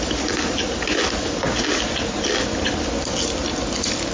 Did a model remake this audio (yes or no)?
no